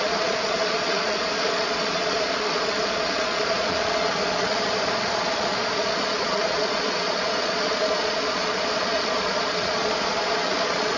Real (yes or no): no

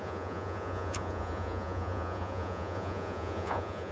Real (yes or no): no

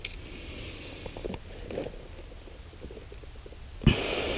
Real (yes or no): yes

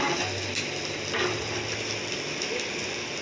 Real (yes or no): yes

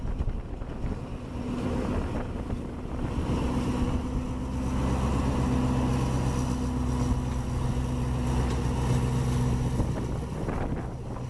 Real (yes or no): yes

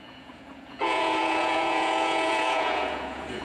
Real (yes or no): no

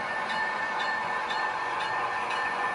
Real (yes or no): no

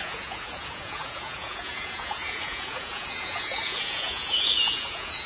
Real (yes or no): no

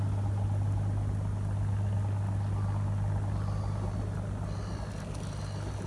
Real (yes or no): yes